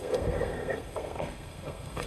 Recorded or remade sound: remade